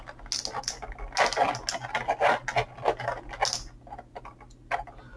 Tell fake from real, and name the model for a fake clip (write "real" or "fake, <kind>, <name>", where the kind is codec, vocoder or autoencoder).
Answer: real